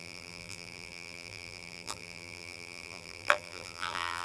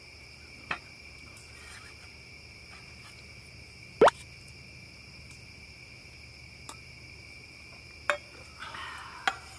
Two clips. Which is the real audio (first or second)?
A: second